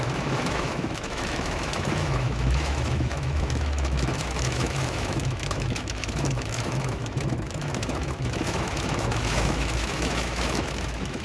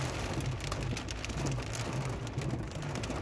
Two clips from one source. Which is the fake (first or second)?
first